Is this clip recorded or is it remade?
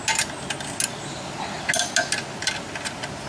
recorded